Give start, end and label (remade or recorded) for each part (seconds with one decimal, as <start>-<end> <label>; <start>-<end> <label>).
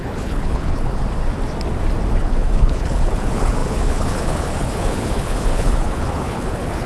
0.0-1.0 remade; 1.0-2.1 recorded; 2.1-6.9 remade